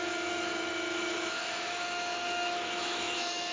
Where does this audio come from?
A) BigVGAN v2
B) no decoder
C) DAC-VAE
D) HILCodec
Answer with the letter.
C